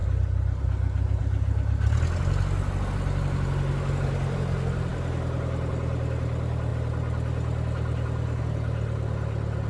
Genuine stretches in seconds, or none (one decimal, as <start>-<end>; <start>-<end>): 0.0-9.7